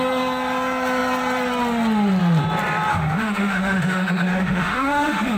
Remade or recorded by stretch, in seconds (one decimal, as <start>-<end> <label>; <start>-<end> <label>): 0.0-2.9 recorded; 2.9-5.4 remade